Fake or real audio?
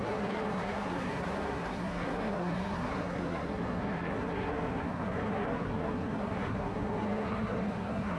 fake